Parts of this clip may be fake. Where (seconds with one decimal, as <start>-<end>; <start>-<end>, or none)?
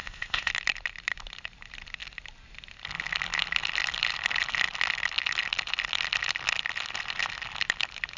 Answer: 0.0-0.5